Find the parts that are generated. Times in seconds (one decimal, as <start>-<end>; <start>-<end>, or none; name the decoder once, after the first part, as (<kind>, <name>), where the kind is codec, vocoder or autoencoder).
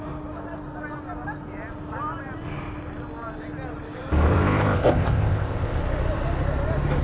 4.3-5.8 (codec, ZipCodec)